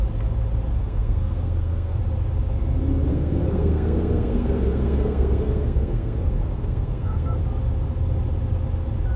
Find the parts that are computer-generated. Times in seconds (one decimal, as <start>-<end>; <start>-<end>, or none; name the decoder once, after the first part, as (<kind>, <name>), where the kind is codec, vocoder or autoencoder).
0.7-2.0 (codec, SNAC); 3.1-7.4

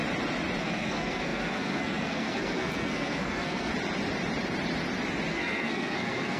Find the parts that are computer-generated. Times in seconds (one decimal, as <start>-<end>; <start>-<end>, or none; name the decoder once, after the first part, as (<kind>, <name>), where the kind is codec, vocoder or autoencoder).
0.6-3.7 (codec, SNAC); 5.3-6.4

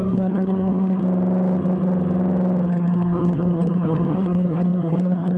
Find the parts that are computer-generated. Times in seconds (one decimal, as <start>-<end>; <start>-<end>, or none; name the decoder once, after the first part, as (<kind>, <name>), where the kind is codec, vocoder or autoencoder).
0.0-1.0 (codec, SNAC); 2.7-5.4

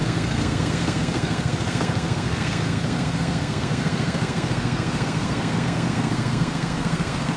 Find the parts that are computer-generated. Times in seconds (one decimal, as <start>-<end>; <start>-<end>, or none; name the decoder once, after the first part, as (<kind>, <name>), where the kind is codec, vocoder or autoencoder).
0.0-7.4 (codec, SNAC)